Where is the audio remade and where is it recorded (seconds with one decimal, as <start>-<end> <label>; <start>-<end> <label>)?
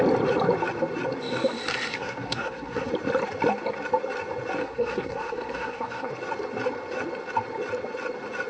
0.0-1.9 recorded; 1.9-2.9 remade; 2.9-4.6 recorded; 4.6-6.1 remade; 6.1-8.5 recorded